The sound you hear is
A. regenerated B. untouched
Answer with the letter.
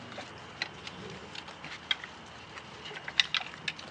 B